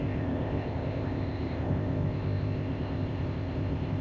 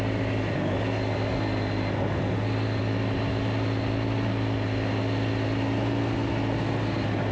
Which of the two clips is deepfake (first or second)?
first